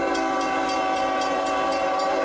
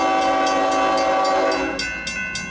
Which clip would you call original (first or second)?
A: second